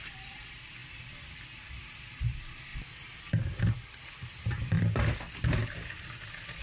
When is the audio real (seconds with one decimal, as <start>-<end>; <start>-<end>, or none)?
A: none